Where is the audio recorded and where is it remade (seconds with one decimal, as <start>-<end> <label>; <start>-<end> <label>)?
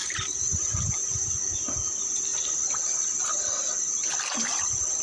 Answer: 0.0-1.1 remade; 1.1-5.0 recorded